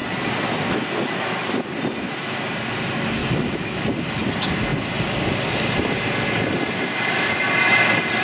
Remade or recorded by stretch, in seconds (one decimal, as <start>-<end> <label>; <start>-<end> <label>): 0.0-3.2 recorded; 3.2-3.8 remade; 3.8-8.2 recorded